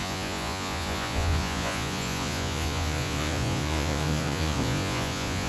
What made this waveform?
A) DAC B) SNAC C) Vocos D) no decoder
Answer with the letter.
C